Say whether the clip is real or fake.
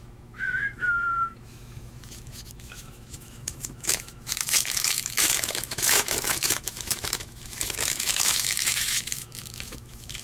fake